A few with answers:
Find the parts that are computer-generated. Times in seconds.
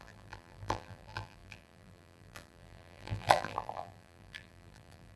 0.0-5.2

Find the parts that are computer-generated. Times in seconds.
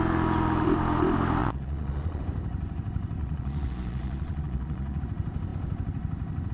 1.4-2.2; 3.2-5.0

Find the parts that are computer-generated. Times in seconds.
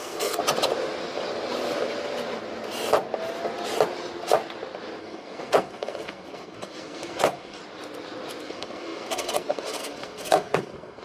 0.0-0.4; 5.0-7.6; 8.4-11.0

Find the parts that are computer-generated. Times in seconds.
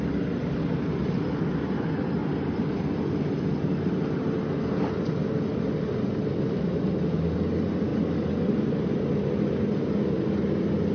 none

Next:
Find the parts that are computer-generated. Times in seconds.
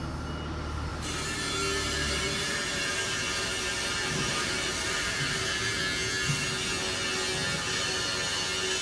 0.9-5.8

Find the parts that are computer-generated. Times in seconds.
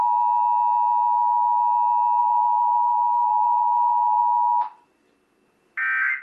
2.2-4.2